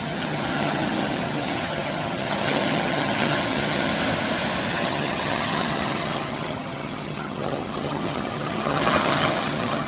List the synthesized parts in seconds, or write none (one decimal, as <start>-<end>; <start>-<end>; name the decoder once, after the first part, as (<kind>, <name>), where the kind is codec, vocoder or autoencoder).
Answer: 0.0-3.9 (vocoder, HiFi-GAN); 4.7-9.9